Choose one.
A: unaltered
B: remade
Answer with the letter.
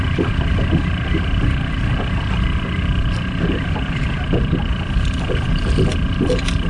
A